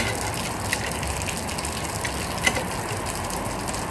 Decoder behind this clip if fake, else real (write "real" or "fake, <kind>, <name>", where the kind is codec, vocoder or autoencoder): fake, vocoder, BigVGAN v2